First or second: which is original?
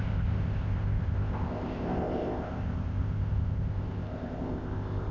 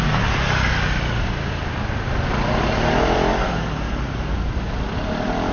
second